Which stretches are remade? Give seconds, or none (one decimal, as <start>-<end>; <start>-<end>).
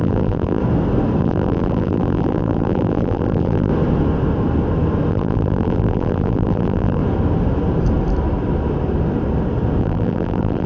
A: 0.0-0.6; 1.2-3.7; 5.1-7.0; 9.8-10.7